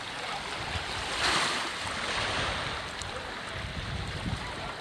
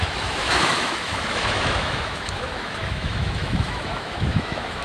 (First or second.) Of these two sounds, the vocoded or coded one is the second